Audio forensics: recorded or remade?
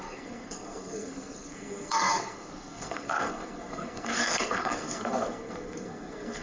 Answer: remade